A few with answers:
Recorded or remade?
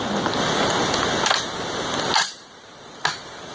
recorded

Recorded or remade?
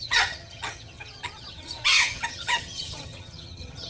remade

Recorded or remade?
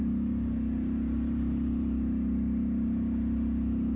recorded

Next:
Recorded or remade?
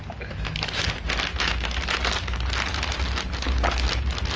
recorded